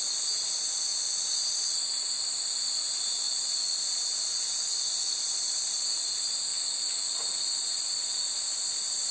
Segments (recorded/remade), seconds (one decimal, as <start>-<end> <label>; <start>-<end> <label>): 0.0-9.1 recorded